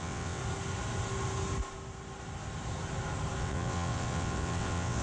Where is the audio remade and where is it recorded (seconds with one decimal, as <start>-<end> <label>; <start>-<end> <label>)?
0.0-0.4 remade; 0.4-3.4 recorded; 3.4-5.0 remade